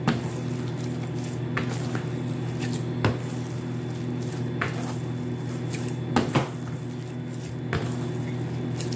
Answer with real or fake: real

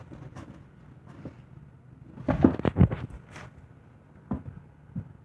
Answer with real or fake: real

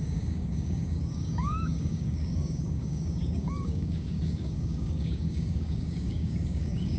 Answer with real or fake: fake